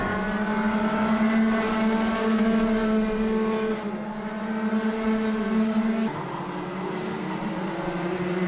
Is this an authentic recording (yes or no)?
yes